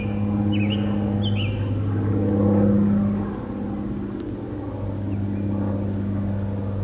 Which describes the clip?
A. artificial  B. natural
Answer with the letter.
B